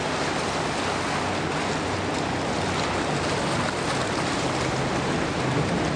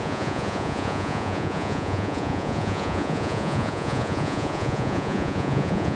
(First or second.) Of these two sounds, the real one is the first